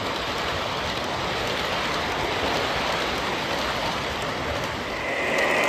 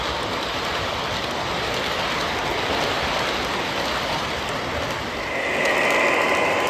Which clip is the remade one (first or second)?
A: first